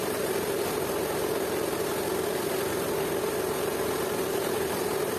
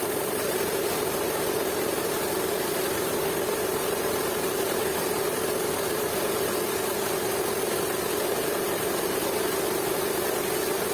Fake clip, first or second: second